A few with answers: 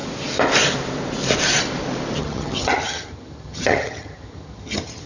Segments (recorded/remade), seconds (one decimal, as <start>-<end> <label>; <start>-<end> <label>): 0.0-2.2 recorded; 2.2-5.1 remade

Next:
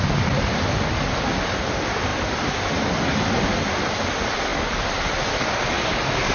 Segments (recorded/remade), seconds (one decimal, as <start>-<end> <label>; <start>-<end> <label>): 0.0-6.3 recorded

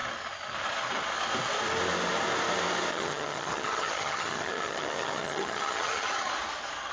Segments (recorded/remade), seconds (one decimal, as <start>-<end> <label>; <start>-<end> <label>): 0.0-2.9 recorded; 2.9-6.3 remade; 6.3-6.9 recorded

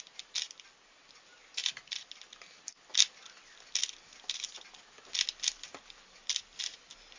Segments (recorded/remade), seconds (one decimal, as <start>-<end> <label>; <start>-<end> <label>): 0.0-7.2 recorded